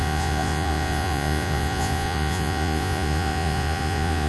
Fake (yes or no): yes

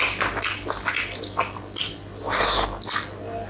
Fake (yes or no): no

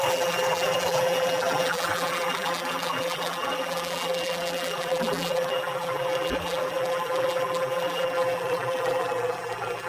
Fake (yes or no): yes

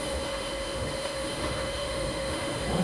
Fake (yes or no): yes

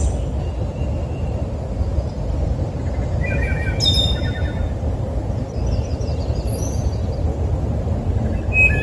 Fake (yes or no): no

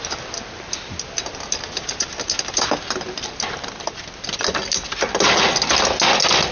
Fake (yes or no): no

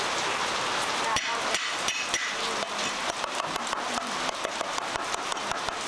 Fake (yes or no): no